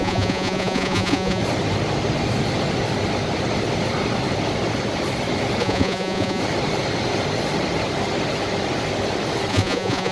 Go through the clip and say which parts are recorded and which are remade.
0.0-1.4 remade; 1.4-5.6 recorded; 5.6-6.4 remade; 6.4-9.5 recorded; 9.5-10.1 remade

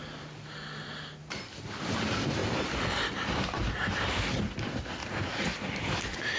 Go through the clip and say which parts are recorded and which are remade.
0.0-5.0 recorded; 5.0-5.6 remade; 5.6-6.4 recorded

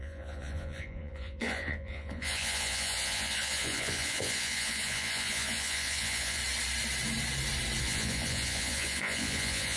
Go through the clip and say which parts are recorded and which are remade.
0.0-6.4 remade; 6.4-7.8 recorded; 7.8-9.8 remade